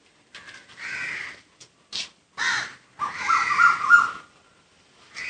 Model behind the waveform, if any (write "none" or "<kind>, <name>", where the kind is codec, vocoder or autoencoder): none